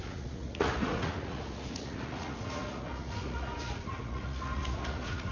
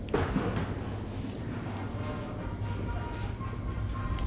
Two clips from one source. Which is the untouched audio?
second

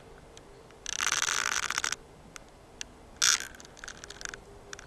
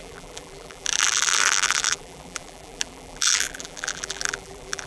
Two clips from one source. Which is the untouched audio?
first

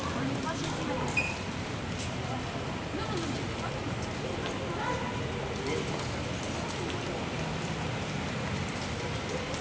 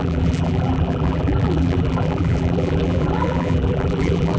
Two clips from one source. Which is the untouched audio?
first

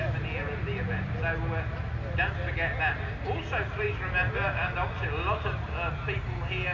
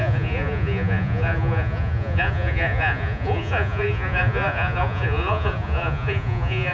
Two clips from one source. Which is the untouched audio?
first